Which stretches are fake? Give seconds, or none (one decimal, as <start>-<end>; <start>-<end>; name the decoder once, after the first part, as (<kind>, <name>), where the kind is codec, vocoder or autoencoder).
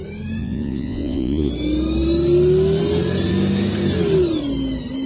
0.4-1.5 (vocoder, Vocos)